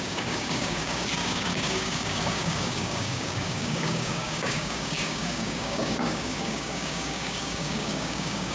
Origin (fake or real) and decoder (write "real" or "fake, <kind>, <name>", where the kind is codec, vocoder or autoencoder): fake, codec, DAC